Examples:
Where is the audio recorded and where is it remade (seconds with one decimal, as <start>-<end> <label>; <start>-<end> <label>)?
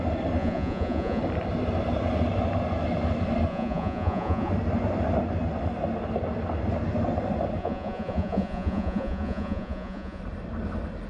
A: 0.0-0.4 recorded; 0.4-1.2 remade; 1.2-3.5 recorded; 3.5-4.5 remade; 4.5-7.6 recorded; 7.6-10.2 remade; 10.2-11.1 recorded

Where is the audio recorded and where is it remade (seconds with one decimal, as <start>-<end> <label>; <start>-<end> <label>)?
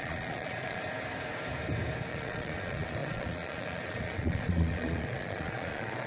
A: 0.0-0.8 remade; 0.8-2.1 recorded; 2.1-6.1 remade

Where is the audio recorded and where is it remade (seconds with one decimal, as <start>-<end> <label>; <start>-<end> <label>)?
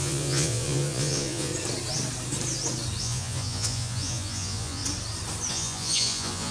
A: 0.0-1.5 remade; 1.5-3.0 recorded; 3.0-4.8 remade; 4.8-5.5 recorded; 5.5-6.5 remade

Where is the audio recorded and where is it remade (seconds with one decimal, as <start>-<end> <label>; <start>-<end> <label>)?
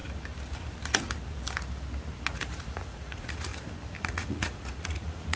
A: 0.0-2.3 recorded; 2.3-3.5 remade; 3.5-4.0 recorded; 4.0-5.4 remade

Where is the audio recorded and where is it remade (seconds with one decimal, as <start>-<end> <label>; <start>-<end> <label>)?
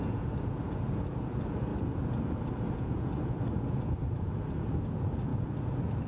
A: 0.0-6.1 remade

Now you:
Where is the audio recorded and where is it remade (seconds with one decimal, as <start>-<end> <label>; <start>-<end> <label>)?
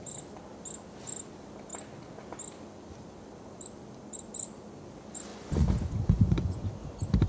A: 0.0-5.3 recorded; 5.3-6.7 remade; 6.7-7.3 recorded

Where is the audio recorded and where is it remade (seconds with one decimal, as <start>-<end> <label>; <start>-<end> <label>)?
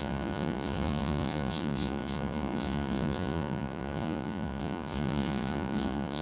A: 0.0-6.2 remade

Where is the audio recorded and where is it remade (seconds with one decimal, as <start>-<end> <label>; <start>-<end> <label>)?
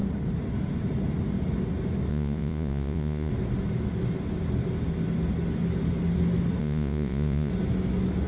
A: 0.0-2.1 recorded; 2.1-3.3 remade; 3.3-6.6 recorded; 6.6-7.5 remade; 7.5-8.3 recorded